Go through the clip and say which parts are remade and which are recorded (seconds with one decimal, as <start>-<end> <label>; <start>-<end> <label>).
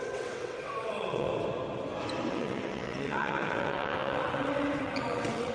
0.0-1.3 remade; 1.3-2.3 recorded; 2.3-5.5 remade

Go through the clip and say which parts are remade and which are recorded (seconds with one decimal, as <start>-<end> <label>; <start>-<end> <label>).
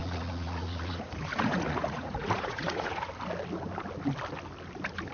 0.0-3.1 remade; 3.1-5.1 recorded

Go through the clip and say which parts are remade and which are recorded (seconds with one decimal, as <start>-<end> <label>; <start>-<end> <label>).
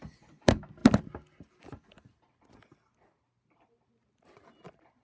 0.0-5.0 recorded